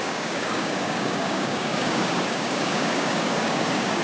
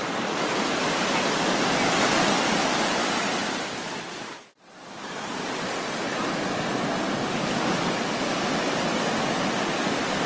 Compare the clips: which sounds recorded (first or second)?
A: second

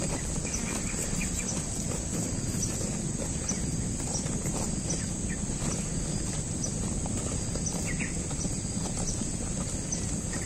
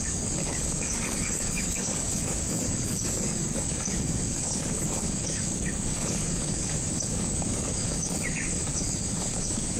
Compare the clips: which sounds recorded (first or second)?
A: first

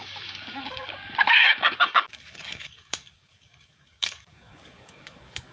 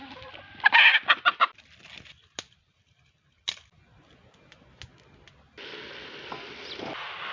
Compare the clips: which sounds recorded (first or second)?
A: second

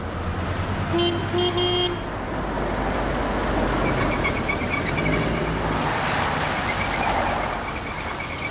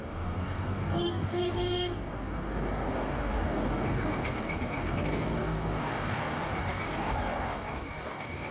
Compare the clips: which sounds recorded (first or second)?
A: first